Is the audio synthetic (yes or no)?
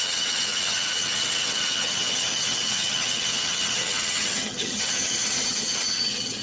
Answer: yes